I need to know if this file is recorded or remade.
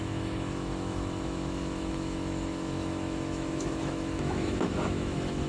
remade